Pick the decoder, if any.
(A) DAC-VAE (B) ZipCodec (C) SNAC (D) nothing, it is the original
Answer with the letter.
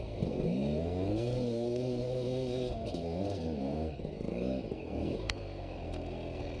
C